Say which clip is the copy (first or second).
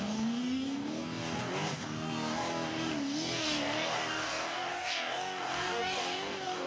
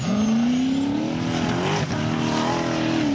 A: first